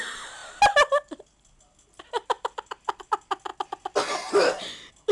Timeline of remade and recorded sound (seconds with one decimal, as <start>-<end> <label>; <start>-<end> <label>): 0.0-5.1 recorded